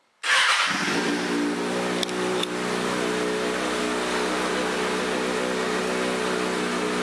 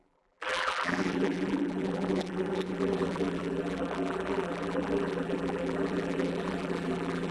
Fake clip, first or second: second